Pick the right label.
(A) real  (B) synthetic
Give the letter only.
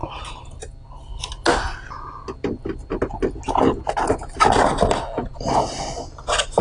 A